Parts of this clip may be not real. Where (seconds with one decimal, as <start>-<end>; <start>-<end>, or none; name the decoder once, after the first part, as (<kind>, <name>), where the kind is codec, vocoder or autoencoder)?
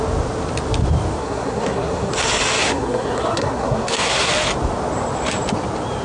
1.2-2.1 (codec, SNAC); 2.6-4.3